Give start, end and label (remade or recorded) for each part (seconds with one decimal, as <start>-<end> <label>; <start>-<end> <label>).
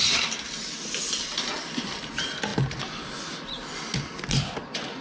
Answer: 0.0-5.0 recorded